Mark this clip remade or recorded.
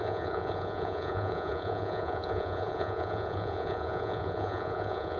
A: remade